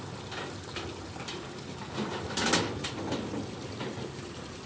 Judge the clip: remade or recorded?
recorded